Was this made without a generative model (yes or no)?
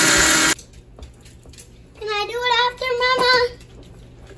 yes